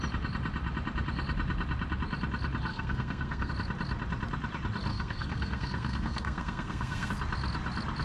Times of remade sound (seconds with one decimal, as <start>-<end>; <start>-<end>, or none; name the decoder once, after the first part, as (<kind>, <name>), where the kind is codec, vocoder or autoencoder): 2.7-3.5 (codec, SNAC); 4.9-7.1